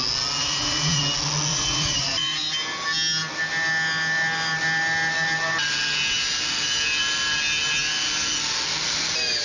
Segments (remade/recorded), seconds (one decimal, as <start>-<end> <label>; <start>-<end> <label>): 0.0-0.4 recorded; 0.4-1.0 remade; 1.0-1.5 recorded; 1.5-2.5 remade; 2.5-9.4 recorded